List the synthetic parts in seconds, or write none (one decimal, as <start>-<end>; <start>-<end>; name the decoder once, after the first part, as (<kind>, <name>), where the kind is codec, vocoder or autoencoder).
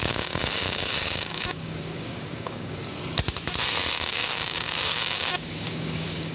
0.0-2.8 (codec, DAC); 3.9-6.3